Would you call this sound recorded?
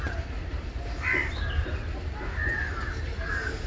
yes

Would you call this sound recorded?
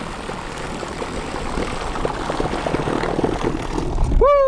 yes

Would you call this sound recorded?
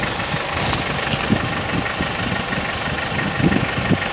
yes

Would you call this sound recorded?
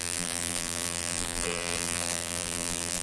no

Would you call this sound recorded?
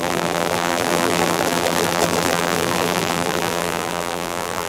no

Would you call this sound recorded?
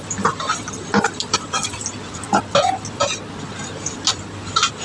yes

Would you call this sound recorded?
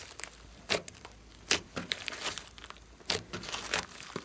yes